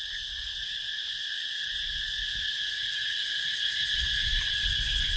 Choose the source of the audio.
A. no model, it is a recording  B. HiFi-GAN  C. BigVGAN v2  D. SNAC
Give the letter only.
C